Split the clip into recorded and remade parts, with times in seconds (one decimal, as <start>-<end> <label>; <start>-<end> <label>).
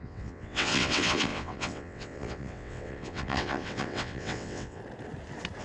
0.0-4.8 remade; 4.8-5.6 recorded